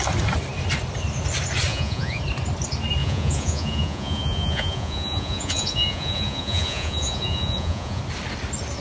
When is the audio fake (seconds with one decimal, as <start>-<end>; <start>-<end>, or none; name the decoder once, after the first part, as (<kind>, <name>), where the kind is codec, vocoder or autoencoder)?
1.7-2.2 (vocoder, Vocos); 3.0-8.0